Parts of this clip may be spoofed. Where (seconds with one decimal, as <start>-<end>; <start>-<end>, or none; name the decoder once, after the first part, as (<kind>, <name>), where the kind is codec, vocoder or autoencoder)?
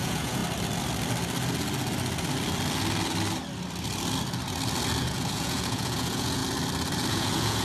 0.0-0.4 (vocoder, Vocos); 5.0-6.4; 7.1-7.6